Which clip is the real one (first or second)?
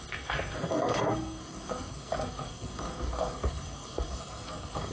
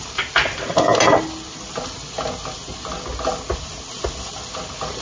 second